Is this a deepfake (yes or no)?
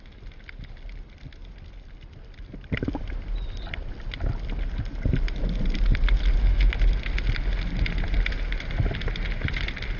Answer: no